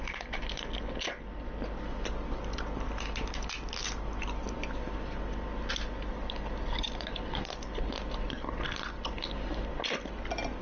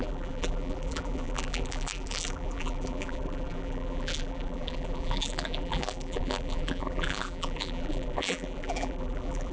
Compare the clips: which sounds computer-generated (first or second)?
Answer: second